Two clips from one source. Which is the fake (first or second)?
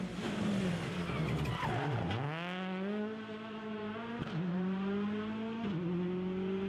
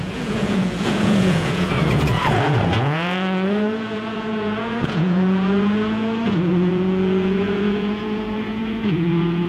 second